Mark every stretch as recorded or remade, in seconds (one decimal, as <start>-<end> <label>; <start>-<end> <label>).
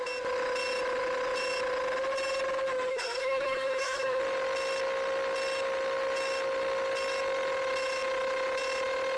0.0-2.9 recorded; 2.9-4.2 remade; 4.2-9.2 recorded